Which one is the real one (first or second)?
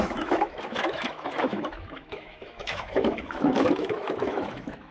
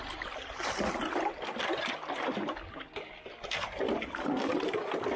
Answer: second